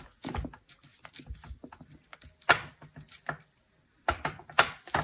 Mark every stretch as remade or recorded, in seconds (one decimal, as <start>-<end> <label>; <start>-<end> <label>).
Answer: 0.0-5.0 recorded